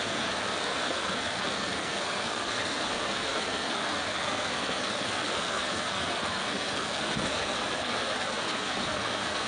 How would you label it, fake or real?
fake